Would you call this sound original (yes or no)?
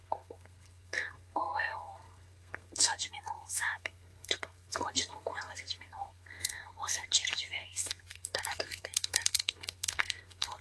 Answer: no